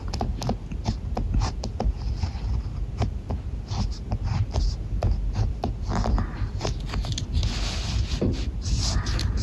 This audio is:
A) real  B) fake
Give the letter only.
A